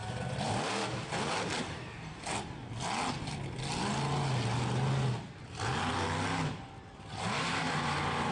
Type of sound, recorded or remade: recorded